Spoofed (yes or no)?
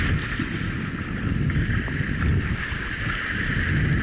no